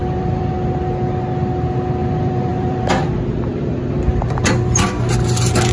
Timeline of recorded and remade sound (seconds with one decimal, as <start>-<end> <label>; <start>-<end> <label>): 0.0-0.5 remade; 0.5-2.0 recorded; 2.0-2.9 remade; 2.9-5.7 recorded